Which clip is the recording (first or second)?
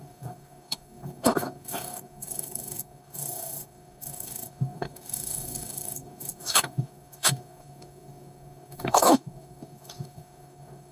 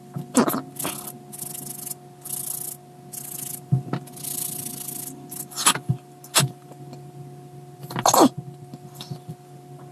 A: second